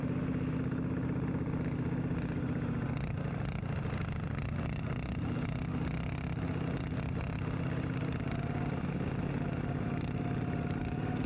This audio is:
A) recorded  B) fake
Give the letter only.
A